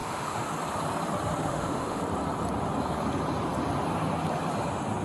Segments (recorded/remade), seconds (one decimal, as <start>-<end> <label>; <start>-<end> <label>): 0.0-0.5 remade; 0.5-1.4 recorded; 1.4-2.0 remade; 2.0-5.0 recorded